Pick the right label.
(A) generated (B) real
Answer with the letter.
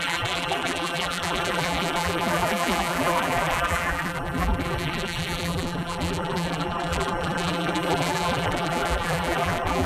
A